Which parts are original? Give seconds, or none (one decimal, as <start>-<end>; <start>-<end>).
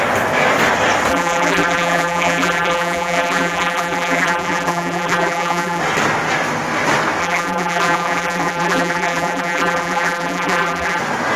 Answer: 0.0-1.1; 5.8-7.2; 11.0-11.4